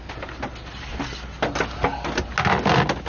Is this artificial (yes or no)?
no